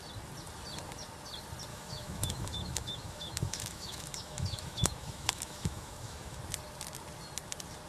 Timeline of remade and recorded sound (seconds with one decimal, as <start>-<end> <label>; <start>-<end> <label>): 0.0-1.7 recorded; 1.7-6.4 remade; 6.4-7.9 recorded